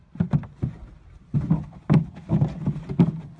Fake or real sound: real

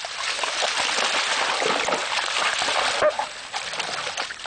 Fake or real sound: real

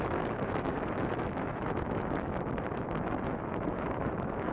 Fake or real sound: fake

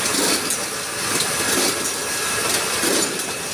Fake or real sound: real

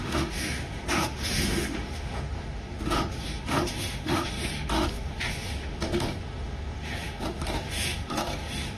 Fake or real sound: fake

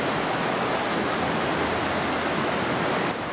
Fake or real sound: real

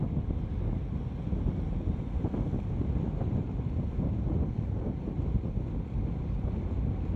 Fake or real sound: real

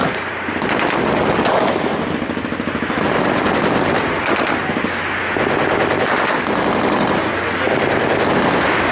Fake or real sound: real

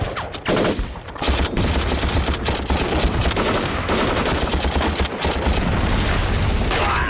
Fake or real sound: real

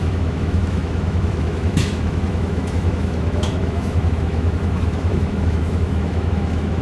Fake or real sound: fake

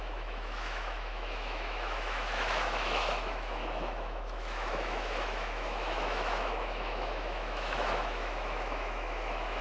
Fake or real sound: fake